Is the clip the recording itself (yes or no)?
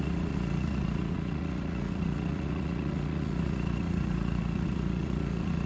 no